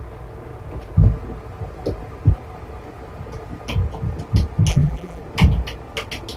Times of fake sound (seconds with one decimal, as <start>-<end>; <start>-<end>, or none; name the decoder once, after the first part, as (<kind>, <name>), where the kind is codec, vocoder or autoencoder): 4.7-5.2 (vocoder, BigVGAN v2)